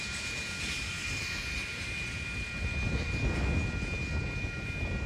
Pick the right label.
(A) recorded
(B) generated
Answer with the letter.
A